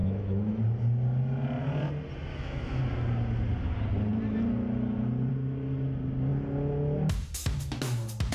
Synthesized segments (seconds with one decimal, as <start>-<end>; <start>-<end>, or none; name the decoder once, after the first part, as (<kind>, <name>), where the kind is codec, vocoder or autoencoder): 0.0-0.6 (autoencoder, DAC-VAE); 2.3-2.8